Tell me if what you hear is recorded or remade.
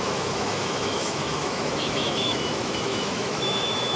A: remade